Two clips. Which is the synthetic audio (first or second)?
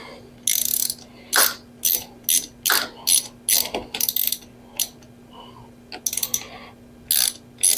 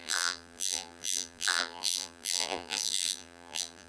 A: second